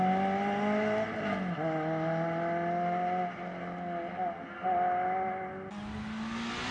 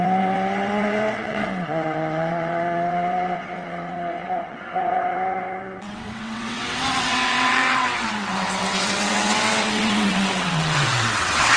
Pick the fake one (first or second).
second